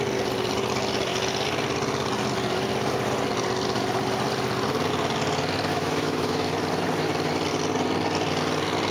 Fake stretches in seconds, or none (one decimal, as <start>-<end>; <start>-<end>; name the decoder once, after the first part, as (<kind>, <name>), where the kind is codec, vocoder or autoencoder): 5.7-6.5 (autoencoder, DAC-VAE)